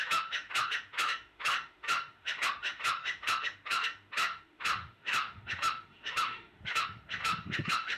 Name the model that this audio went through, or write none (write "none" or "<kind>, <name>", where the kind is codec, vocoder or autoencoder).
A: autoencoder, DAC-VAE